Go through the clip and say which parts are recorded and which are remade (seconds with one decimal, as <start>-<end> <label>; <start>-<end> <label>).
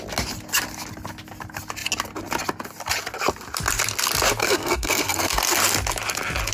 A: 0.0-4.4 recorded; 4.4-5.4 remade; 5.4-6.5 recorded